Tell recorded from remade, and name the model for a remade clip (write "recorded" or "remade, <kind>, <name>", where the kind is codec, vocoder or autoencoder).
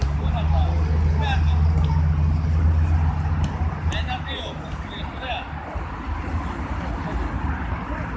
recorded